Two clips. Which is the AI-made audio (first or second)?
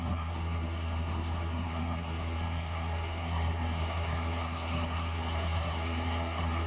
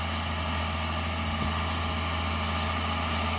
first